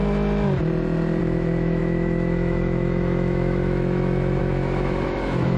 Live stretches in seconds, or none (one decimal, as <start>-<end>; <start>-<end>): 0.0-1.2